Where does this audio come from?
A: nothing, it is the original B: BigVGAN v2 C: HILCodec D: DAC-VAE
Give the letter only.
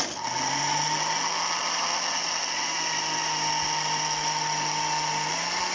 A